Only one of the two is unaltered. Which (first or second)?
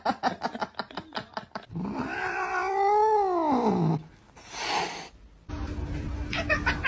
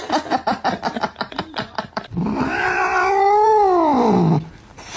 first